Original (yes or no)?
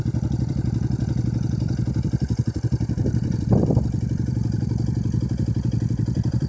no